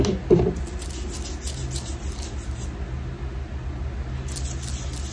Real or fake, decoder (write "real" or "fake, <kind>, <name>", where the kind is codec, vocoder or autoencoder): real